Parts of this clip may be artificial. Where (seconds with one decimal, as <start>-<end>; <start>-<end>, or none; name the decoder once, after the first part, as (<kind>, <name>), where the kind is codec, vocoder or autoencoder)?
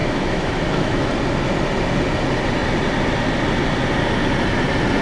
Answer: 0.0-1.1 (autoencoder, DAC-VAE)